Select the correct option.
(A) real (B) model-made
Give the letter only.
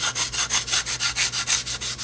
A